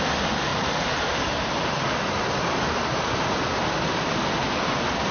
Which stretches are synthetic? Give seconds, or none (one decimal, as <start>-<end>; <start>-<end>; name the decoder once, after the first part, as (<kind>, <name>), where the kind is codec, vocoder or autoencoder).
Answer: 0.5-3.6 (vocoder, BigVGAN v2)